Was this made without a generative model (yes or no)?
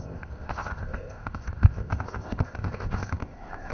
no